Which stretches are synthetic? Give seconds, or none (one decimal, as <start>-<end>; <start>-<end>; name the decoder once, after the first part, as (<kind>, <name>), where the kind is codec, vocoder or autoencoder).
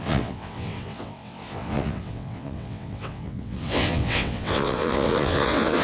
0.0-5.8 (vocoder, WaveNeXt)